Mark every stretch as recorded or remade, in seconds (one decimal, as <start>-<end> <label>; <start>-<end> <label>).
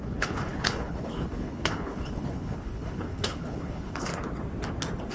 0.0-4.1 remade; 4.1-5.1 recorded